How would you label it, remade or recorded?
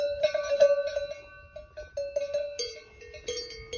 recorded